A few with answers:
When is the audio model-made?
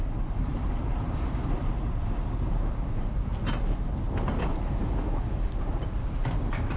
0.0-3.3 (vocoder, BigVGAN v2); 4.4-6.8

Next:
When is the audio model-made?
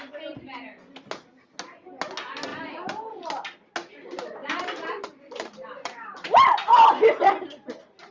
2.5-3.2 (vocoder, BigVGAN v2); 4.4-7.2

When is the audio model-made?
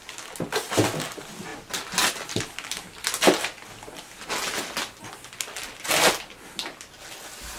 none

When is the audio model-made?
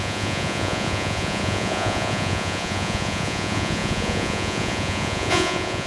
0.0-5.9 (vocoder, Vocos)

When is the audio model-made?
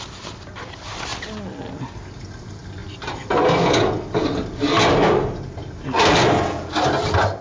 none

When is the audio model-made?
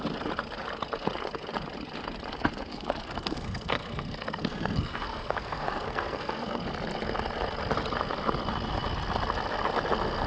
2.7-6.6 (codec, SNAC)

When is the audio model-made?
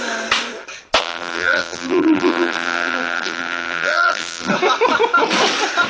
1.0-4.5 (vocoder, BigVGAN v2)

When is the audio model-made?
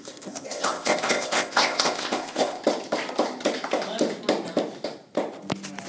0.0-2.6 (codec, ZipCodec)